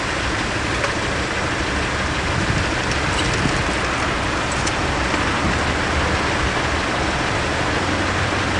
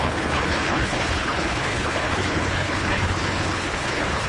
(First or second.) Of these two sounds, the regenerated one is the second